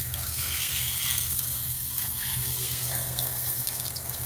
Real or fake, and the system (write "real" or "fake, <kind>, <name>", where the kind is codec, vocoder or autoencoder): fake, codec, SNAC